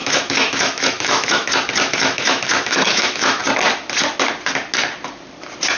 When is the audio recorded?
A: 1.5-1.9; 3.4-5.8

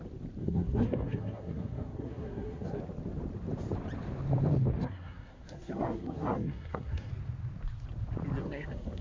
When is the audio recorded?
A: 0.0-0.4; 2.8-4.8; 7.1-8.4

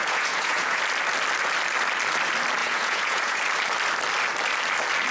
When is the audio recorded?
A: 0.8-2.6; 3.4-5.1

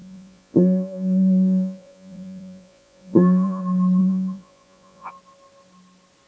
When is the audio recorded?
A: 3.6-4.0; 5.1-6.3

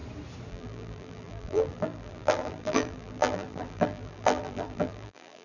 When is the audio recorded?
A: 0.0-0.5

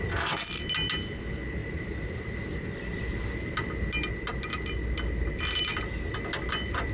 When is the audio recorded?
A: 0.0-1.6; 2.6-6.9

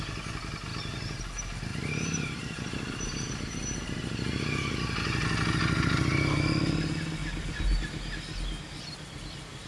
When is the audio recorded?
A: 0.0-0.7; 1.2-1.7; 4.8-9.7